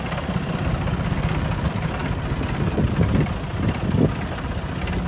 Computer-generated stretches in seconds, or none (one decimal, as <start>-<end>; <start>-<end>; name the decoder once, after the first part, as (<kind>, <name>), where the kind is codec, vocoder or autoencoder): none